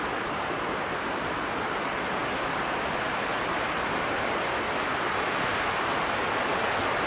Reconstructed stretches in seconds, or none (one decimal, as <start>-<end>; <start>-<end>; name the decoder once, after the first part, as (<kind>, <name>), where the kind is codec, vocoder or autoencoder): none